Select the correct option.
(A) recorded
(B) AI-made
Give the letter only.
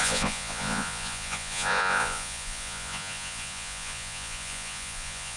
B